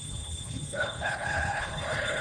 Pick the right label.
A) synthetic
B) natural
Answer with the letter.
A